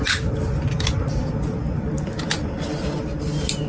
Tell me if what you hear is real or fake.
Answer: real